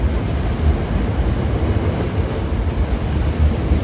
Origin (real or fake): real